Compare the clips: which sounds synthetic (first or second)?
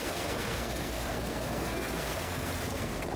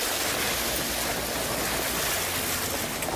first